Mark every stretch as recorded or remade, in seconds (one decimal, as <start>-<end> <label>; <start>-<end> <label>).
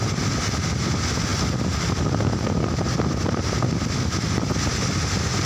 0.0-5.5 recorded